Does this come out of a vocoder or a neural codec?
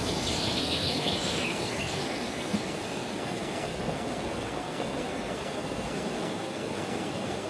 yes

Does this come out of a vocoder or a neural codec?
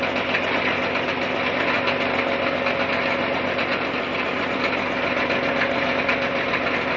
no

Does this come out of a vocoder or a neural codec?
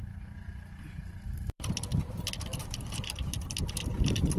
yes